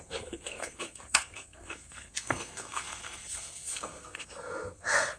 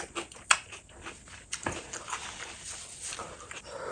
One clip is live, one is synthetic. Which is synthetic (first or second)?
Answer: first